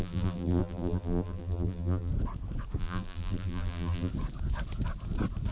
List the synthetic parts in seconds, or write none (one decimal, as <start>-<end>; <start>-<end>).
0.0-2.1; 2.8-4.1